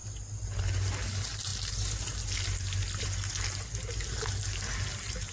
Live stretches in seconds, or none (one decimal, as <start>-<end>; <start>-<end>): 0.0-5.3